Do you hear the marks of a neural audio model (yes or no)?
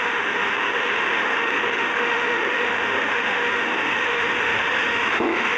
yes